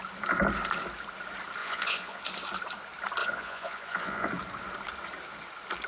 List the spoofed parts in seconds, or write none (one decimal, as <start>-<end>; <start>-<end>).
1.6-2.2; 3.2-4.3